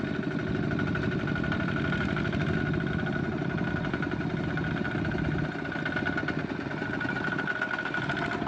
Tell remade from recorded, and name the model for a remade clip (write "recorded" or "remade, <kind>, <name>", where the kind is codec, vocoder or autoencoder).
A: recorded